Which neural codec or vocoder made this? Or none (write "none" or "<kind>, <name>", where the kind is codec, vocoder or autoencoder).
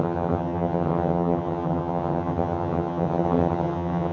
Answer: vocoder, HiFi-GAN